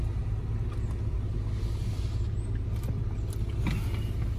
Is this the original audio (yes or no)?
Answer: yes